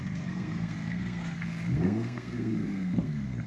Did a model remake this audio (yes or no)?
yes